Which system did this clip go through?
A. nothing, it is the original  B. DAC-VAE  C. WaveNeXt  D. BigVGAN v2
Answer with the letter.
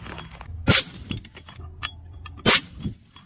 A